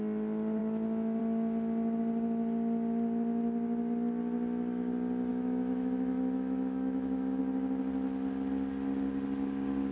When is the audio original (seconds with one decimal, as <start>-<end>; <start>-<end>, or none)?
0.0-5.3; 7.4-9.9